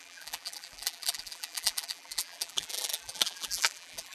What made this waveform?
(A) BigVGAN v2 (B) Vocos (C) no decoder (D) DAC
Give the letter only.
A